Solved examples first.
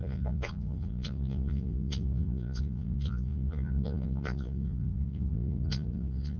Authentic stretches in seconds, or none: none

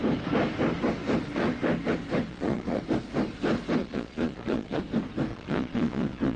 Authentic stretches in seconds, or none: 0.0-2.3; 2.8-3.8; 4.8-5.3

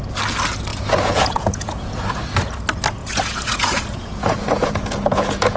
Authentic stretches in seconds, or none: 0.0-0.7; 2.2-3.0

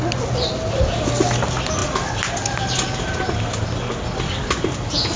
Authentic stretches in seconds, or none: 0.0-5.2

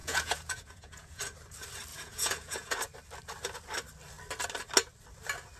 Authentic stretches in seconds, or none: 1.2-1.9; 2.7-5.6

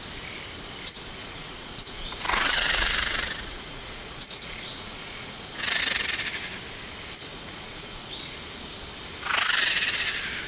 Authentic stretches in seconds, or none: 0.0-1.2; 5.8-7.3; 8.1-10.5

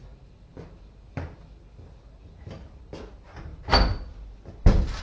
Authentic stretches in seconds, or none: 0.0-5.0